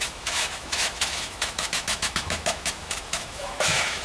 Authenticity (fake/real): fake